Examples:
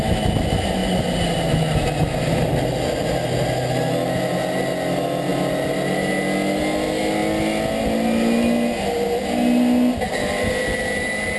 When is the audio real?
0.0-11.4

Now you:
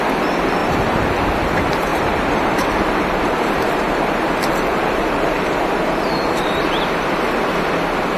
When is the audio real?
0.0-0.6; 1.1-1.9; 6.8-8.2